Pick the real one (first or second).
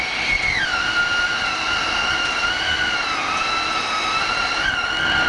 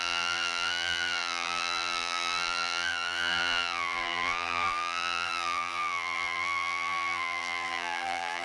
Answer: first